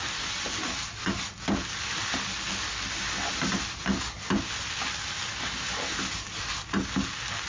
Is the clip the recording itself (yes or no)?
yes